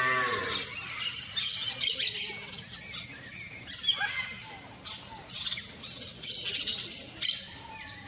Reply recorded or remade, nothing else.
recorded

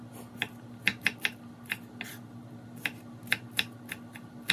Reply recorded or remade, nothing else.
recorded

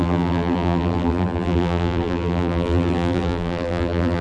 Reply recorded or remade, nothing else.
remade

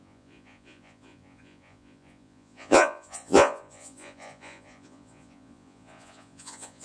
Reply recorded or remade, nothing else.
remade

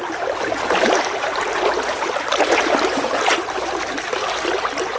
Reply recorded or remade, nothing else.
remade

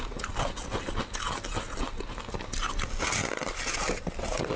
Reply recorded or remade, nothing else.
recorded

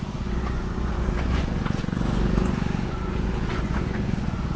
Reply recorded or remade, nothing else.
remade